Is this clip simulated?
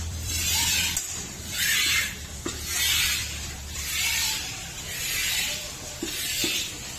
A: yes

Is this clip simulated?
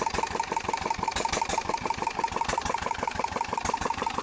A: yes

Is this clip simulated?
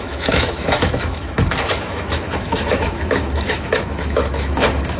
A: yes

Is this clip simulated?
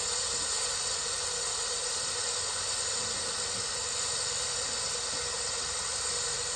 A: no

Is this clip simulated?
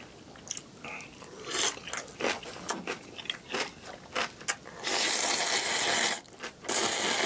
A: no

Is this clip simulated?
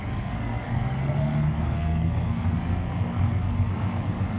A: yes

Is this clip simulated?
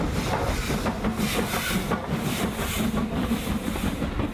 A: no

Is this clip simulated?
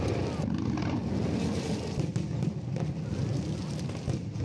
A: no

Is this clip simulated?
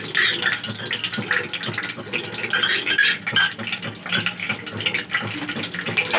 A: no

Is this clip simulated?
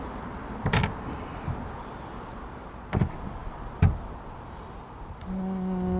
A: no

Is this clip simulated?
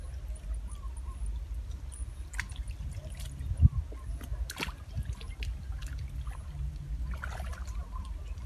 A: no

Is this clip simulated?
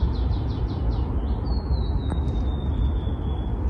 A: no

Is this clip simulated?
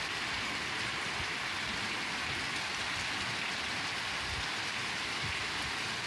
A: no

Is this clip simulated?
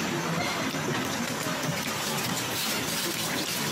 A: no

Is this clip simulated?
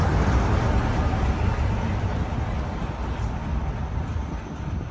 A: no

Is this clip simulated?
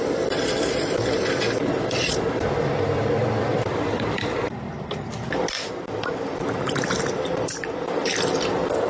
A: yes